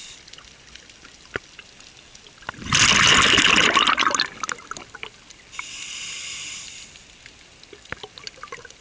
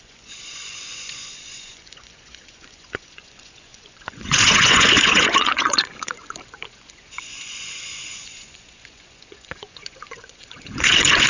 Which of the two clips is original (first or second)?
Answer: first